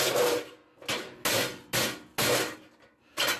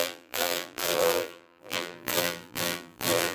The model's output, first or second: second